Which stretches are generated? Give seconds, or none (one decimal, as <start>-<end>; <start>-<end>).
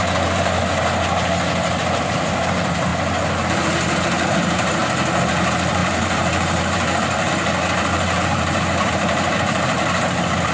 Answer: 0.0-0.6; 1.8-2.9; 3.5-4.8; 5.3-10.5